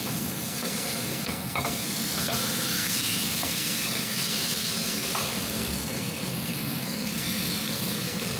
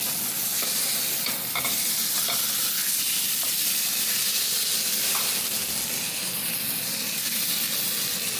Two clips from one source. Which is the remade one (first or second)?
first